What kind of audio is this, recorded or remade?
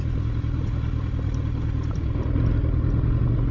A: recorded